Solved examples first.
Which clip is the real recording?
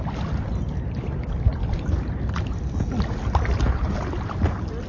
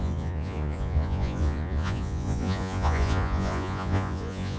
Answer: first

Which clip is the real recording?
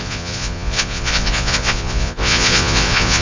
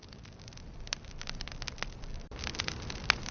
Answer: second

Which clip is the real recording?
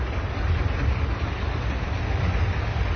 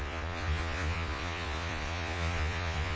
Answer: first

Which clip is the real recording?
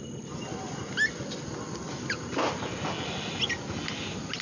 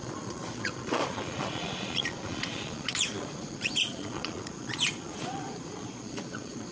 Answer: first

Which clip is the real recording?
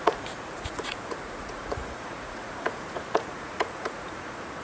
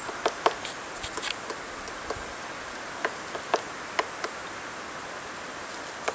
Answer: second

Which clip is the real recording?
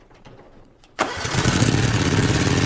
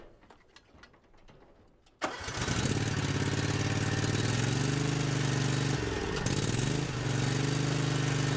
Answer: second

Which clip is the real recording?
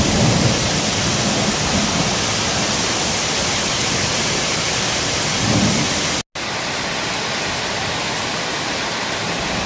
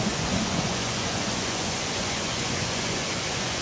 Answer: first